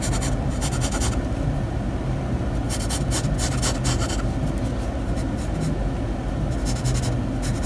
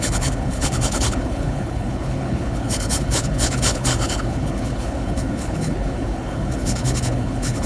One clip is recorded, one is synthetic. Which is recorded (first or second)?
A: first